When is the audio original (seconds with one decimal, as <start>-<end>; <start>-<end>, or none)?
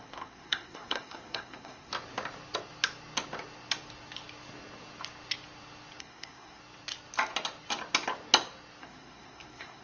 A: 1.9-6.0; 6.6-8.8